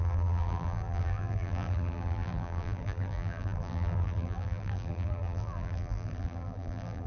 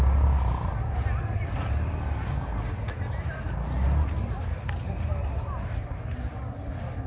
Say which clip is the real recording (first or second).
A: second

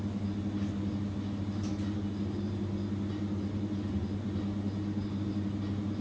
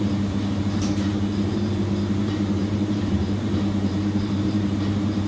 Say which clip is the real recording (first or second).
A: first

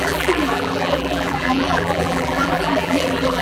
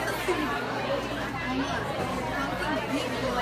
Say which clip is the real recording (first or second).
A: second